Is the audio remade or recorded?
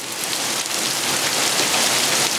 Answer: recorded